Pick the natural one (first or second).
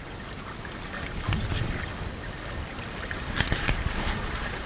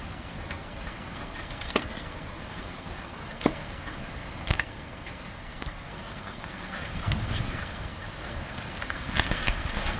first